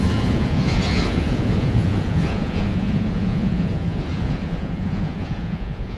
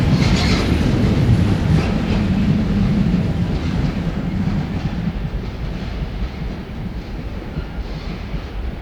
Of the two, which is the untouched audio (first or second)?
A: second